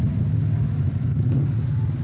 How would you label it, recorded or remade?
recorded